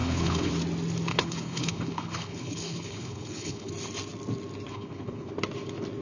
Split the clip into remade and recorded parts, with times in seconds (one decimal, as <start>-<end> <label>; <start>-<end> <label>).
0.0-0.5 remade; 0.5-1.1 recorded; 1.1-3.7 remade; 3.7-4.7 recorded; 4.7-5.3 remade; 5.3-6.0 recorded